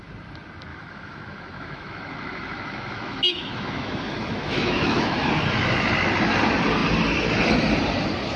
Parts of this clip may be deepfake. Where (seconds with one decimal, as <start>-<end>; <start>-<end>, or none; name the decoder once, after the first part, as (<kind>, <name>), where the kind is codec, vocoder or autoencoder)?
0.7-5.3 (autoencoder, DAC-VAE)